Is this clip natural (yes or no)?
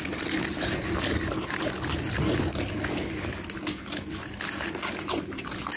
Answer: yes